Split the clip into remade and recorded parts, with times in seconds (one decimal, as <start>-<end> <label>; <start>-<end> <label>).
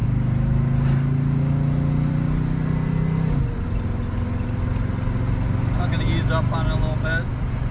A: 0.0-7.7 recorded